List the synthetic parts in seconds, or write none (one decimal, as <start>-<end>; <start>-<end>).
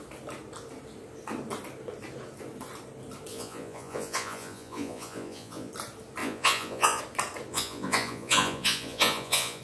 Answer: 3.3-5.7; 6.2-7.0; 7.5-9.6